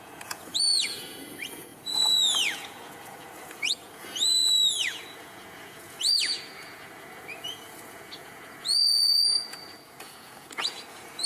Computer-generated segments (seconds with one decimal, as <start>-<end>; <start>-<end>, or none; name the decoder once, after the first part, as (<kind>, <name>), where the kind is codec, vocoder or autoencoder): 0.0-11.3 (vocoder, Vocos)